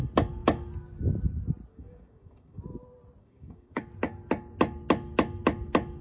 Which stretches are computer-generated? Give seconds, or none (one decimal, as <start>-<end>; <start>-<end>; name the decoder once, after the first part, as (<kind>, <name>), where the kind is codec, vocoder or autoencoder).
1.7-2.6 (codec, DAC); 3.2-3.8

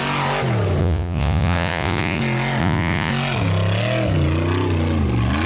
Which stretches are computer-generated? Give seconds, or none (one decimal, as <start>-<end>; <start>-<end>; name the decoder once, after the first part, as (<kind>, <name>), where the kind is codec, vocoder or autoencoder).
0.8-2.2 (vocoder, Vocos); 2.6-3.1